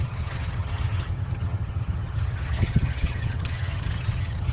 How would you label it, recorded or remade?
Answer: remade